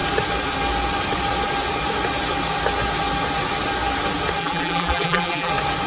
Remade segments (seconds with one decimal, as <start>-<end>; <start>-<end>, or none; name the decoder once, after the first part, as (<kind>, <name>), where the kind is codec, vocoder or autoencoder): 4.4-5.5 (vocoder, BigVGAN v2)